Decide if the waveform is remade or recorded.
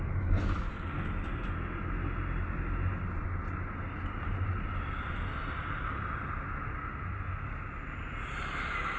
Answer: recorded